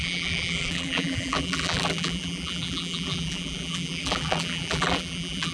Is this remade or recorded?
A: remade